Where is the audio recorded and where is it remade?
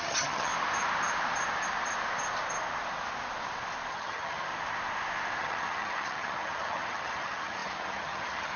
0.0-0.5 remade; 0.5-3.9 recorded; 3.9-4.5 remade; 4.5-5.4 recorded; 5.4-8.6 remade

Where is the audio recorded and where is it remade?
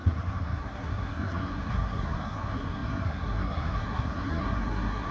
0.0-5.1 remade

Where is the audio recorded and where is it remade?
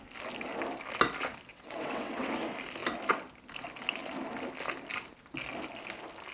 0.0-1.5 recorded; 1.5-2.3 remade; 2.3-6.3 recorded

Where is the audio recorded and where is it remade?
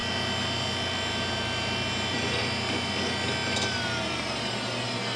0.0-5.2 recorded